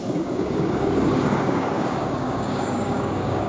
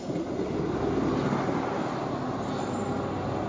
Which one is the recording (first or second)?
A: second